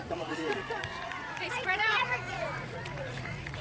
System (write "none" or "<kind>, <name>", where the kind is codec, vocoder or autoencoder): vocoder, Vocos